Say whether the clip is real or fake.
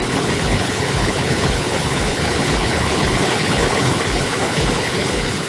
fake